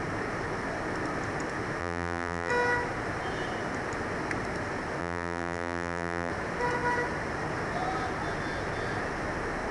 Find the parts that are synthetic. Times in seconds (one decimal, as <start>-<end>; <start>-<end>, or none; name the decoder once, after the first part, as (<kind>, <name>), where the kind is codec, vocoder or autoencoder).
1.8-2.5 (vocoder, BigVGAN v2); 5.0-6.3